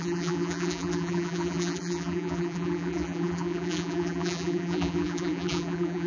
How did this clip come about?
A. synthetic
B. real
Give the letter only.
A